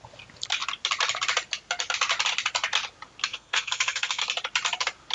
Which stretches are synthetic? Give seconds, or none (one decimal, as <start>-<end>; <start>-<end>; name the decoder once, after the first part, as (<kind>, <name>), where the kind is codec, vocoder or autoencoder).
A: 3.3-4.2 (codec, SNAC)